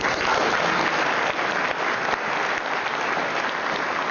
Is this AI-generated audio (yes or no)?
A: no